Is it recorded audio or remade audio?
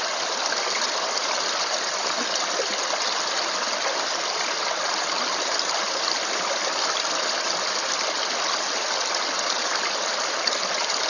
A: recorded